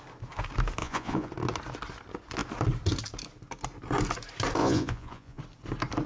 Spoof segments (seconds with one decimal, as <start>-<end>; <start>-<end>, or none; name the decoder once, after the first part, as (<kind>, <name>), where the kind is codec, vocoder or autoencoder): 0.8-1.3 (vocoder, Vocos); 4.6-5.4